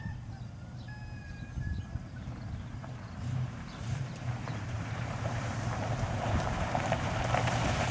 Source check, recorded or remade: remade